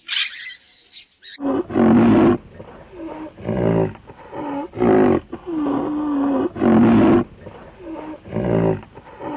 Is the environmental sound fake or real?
real